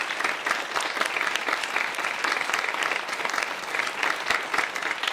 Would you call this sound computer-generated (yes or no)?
no